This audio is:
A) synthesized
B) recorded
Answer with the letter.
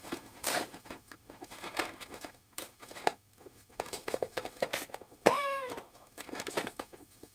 A